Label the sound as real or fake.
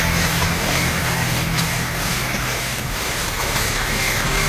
fake